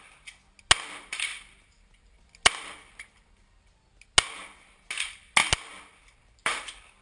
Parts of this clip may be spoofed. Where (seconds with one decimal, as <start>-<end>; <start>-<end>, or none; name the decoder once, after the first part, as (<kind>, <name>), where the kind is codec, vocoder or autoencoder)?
none